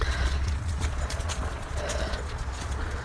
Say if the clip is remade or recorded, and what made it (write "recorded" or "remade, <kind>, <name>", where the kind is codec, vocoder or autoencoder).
remade, vocoder, Vocos